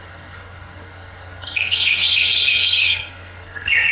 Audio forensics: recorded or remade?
remade